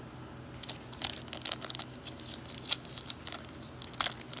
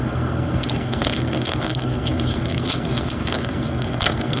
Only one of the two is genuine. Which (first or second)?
first